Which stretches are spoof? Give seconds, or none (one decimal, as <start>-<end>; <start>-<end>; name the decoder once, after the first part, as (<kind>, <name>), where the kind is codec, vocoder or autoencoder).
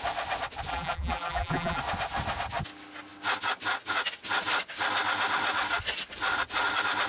0.7-1.8 (vocoder, BigVGAN v2)